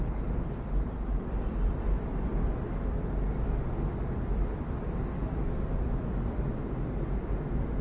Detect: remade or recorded remade